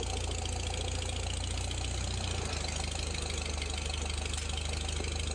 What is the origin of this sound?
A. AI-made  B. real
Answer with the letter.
B